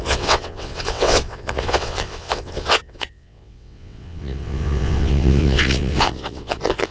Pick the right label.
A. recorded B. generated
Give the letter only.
B